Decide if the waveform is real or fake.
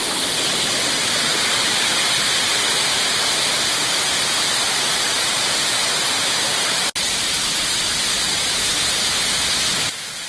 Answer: real